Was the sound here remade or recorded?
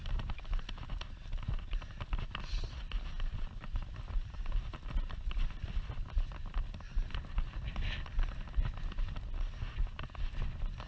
recorded